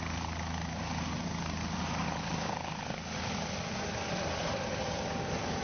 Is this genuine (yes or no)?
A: yes